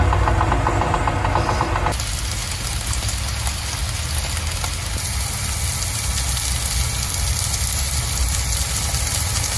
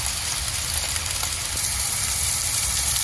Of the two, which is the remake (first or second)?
second